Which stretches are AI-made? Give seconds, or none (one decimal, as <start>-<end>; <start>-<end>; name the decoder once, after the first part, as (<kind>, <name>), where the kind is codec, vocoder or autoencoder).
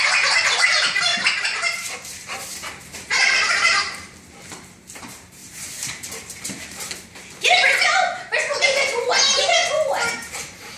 0.0-9.6 (vocoder, BigVGAN v2); 10.1-10.8